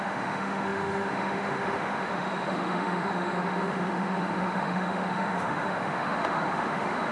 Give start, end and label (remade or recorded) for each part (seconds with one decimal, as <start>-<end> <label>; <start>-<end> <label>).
0.0-7.1 remade